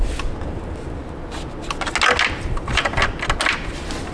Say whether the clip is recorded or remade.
recorded